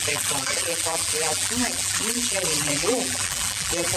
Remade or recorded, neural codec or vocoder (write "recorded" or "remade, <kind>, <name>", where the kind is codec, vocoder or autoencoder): remade, vocoder, BigVGAN v2